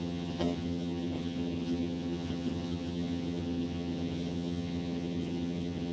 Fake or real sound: fake